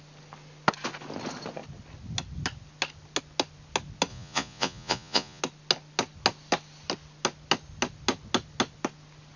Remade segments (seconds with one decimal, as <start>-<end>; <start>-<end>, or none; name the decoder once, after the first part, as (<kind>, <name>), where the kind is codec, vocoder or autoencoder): 4.1-5.4 (vocoder, Vocos)